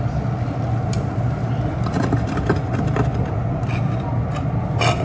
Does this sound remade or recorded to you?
recorded